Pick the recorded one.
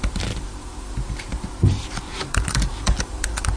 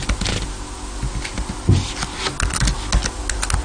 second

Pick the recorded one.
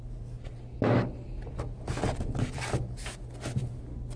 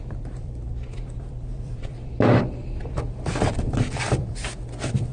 first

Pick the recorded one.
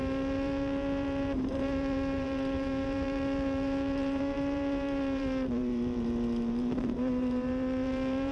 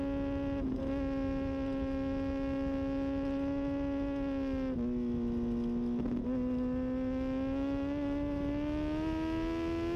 second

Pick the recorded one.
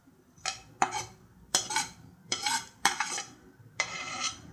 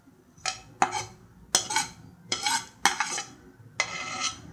second